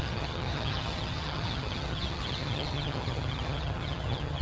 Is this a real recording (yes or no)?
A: no